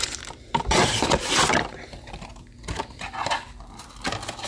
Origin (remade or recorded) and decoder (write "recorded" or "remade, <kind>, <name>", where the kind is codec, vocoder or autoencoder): remade, vocoder, BigVGAN v2